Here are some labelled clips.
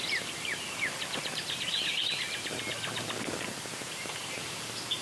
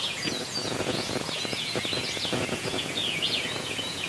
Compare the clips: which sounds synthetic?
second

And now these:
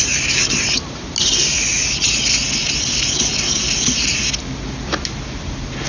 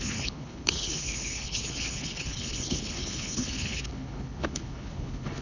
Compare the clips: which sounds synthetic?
second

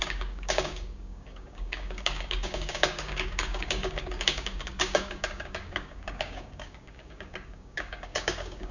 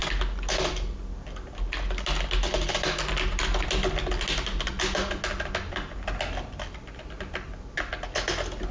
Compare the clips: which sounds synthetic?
first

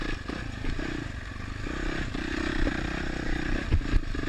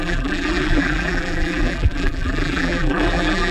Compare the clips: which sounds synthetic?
second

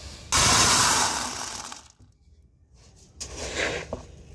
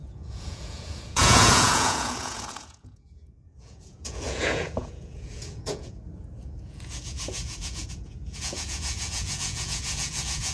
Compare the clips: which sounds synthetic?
second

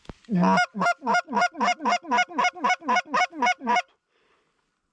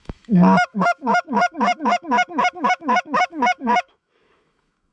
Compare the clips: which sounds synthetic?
second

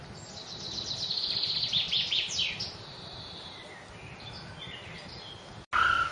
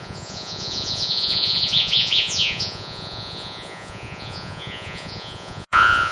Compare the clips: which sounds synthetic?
second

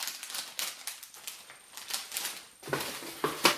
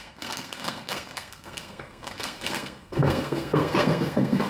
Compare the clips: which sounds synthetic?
second